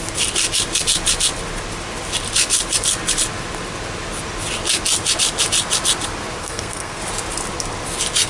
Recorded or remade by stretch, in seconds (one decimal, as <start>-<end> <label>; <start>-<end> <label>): 0.0-6.4 recorded; 6.4-7.0 remade; 7.0-8.3 recorded